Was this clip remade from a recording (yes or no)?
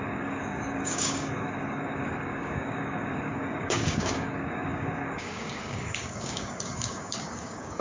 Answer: yes